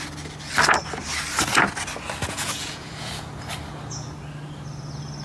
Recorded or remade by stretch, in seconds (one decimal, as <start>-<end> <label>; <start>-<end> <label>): 0.0-2.2 recorded; 2.2-3.1 remade; 3.1-5.2 recorded